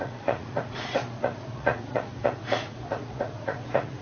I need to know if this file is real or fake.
fake